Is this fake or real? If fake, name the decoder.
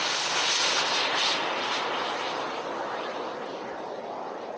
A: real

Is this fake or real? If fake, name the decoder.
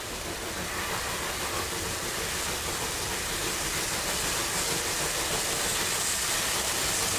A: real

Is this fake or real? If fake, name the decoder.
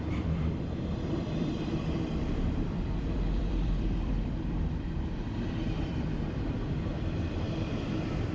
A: fake, vocoder, BigVGAN v2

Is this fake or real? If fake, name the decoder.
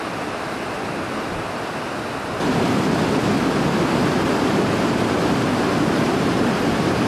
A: real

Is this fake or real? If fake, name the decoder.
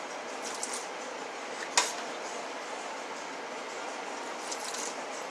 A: real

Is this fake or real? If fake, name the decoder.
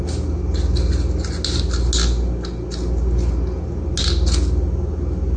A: real